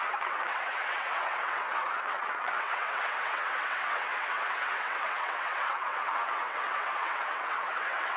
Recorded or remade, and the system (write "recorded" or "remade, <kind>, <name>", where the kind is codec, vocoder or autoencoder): remade, vocoder, WaveNeXt